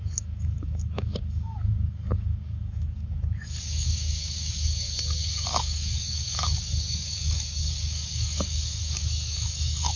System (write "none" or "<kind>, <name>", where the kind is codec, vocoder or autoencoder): codec, DAC